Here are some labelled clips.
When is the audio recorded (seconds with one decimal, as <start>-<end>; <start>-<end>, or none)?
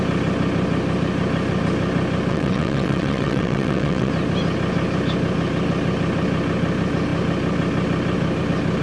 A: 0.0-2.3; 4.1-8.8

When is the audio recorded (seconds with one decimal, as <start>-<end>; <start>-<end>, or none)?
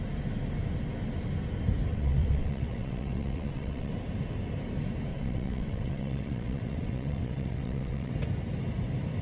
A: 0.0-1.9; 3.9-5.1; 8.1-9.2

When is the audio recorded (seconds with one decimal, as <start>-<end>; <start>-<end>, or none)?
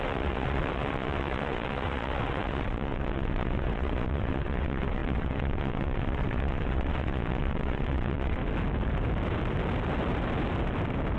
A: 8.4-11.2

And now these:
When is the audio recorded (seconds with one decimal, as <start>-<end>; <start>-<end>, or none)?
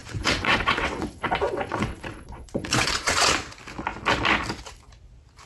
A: 3.3-5.5